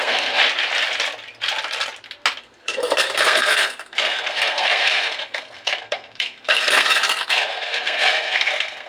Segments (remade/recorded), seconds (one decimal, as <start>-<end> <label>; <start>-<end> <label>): 0.0-0.4 remade; 0.4-2.4 recorded; 2.4-8.9 remade